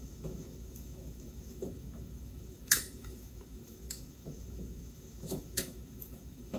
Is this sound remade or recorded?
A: remade